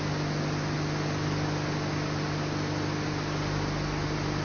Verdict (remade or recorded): recorded